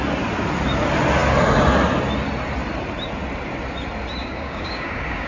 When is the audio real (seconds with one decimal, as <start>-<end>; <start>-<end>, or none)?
0.0-4.2